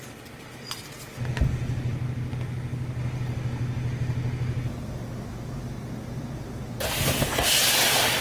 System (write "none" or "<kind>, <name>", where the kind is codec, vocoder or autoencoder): none